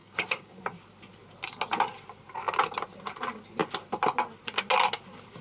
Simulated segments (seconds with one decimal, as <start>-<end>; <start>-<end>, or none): 0.0-0.6